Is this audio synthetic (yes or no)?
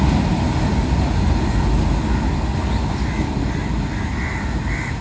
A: no